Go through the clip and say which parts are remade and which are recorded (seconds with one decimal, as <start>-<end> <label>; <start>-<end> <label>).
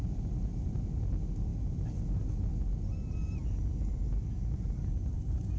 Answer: 0.0-5.6 recorded